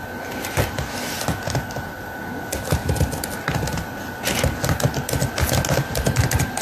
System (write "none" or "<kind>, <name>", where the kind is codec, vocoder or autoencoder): none